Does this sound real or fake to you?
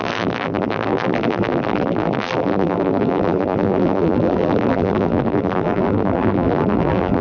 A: fake